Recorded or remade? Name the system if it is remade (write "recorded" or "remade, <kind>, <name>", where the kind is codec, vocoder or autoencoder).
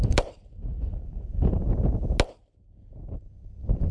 recorded